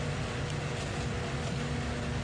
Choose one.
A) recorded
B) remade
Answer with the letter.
A